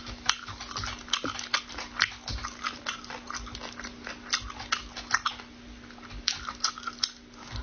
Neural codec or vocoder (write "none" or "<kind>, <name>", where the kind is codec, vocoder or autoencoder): none